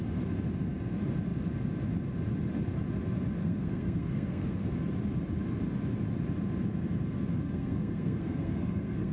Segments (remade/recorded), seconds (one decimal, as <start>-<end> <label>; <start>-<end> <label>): 0.0-3.4 recorded; 3.4-4.7 remade; 4.7-7.3 recorded; 7.3-9.1 remade